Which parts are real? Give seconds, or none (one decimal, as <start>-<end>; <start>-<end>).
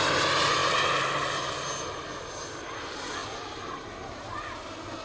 0.0-5.0